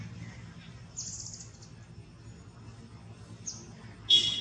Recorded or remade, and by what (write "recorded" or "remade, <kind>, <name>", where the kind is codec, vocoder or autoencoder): recorded